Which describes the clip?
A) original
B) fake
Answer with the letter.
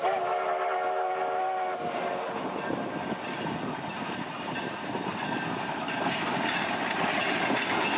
A